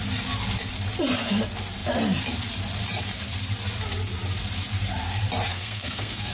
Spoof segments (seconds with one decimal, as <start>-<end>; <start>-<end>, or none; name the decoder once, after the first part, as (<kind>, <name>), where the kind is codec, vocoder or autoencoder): 5.5-6.3 (codec, SNAC)